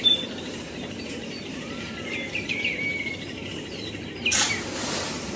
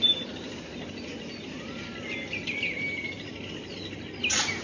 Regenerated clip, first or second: first